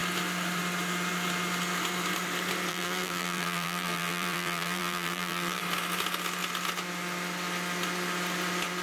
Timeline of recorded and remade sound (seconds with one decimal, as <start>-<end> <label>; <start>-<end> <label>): 0.0-2.7 recorded; 2.7-5.6 remade; 5.6-8.8 recorded